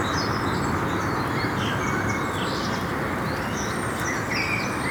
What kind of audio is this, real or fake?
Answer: real